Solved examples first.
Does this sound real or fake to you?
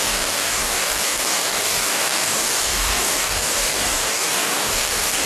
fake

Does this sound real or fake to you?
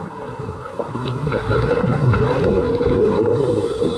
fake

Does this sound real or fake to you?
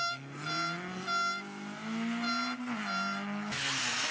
real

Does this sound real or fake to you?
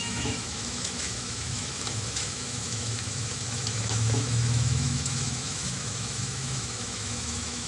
fake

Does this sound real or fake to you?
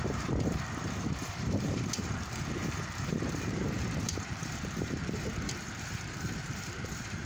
fake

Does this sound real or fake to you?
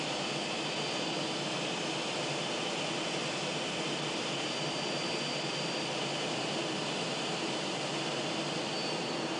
real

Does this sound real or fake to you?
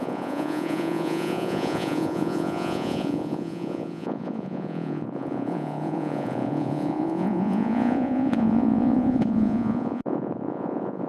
fake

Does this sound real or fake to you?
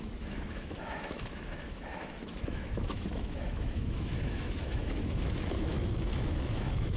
fake